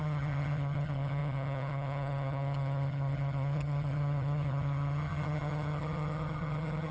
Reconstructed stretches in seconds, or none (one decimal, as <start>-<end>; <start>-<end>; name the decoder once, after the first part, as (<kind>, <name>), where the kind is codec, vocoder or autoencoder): 0.0-6.9 (vocoder, HiFi-GAN)